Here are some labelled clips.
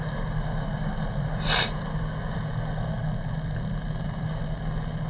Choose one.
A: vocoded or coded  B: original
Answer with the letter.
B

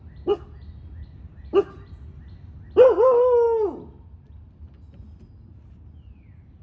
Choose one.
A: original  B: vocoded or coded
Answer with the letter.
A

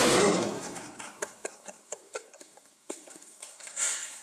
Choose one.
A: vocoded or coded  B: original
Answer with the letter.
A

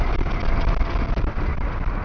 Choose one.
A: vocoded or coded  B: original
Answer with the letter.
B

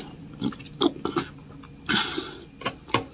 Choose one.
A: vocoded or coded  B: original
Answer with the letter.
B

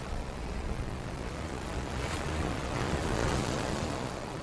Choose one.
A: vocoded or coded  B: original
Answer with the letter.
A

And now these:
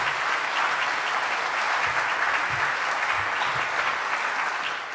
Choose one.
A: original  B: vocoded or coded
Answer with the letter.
A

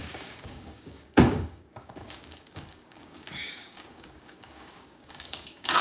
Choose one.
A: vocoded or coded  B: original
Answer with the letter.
A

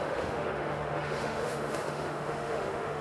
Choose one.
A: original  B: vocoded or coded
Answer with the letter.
B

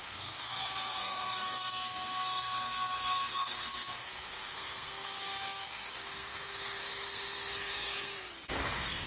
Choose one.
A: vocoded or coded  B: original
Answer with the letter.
A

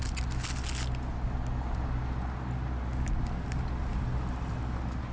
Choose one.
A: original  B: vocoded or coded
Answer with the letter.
A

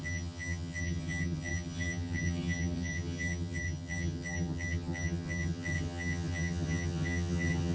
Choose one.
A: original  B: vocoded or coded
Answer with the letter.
B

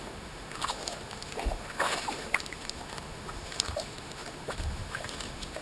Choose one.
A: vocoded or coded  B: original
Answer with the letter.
A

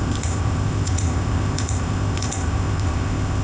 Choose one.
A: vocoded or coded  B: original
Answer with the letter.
A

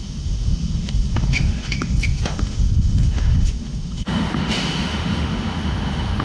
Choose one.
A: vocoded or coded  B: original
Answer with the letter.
A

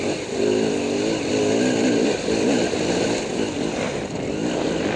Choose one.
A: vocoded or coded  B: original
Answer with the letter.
B